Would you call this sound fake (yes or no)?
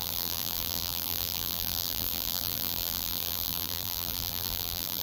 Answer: yes